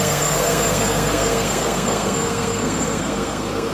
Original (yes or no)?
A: no